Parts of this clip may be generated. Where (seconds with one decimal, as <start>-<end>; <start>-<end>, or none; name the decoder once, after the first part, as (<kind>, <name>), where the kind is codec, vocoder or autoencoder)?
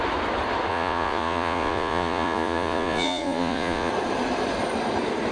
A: 0.7-3.9 (vocoder, Vocos)